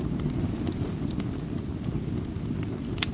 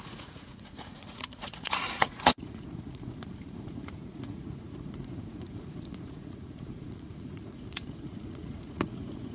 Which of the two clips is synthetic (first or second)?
second